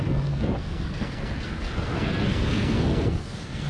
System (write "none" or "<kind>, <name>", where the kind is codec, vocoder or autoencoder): codec, SNAC